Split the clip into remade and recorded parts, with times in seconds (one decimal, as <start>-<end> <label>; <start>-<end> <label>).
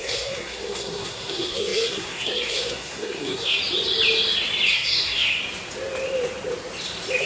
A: 0.0-3.6 remade; 3.6-4.7 recorded; 4.7-5.4 remade; 5.4-7.2 recorded